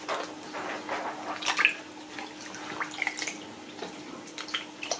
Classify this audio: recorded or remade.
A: recorded